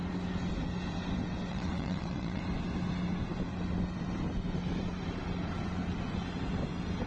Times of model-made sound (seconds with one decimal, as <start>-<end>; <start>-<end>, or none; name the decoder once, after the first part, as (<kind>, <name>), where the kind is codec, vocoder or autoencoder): 1.5-2.4 (vocoder, WaveNeXt)